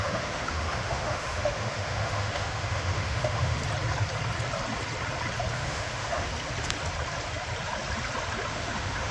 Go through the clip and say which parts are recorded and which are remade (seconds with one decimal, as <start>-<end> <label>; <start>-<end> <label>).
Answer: 0.0-3.6 remade; 3.6-5.5 recorded; 5.5-6.3 remade; 6.3-8.5 recorded; 8.5-9.1 remade